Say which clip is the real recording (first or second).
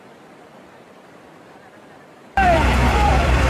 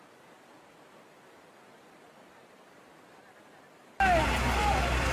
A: second